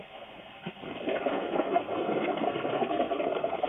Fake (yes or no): yes